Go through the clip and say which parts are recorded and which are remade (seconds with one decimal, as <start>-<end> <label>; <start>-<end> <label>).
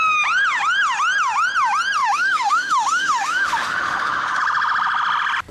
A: 0.0-2.0 recorded; 2.0-4.4 remade; 4.4-5.5 recorded